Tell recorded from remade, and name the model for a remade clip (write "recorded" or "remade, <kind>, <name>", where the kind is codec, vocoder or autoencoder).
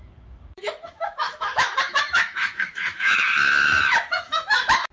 remade, autoencoder, DAC-VAE